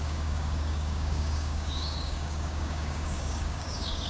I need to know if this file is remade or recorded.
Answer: remade